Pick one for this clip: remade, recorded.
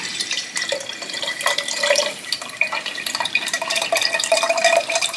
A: remade